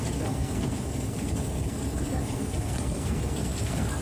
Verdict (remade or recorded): remade